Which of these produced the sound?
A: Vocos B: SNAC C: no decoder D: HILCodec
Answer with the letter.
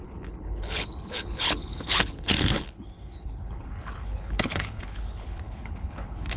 D